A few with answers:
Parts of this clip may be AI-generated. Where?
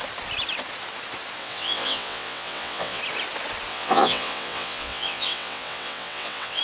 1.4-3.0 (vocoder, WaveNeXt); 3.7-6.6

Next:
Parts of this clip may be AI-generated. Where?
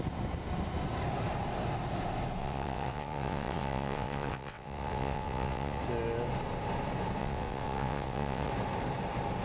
2.4-5.8 (vocoder, WaveNeXt); 7.2-8.5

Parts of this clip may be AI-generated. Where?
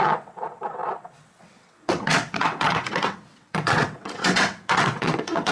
0.0-5.5 (vocoder, WaveNeXt)